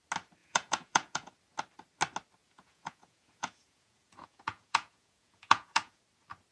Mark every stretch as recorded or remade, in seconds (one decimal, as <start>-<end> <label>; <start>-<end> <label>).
0.0-0.4 recorded; 0.4-1.3 remade; 1.3-2.4 recorded; 2.4-6.0 remade; 6.0-6.5 recorded